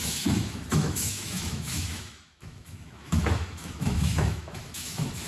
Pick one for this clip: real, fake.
fake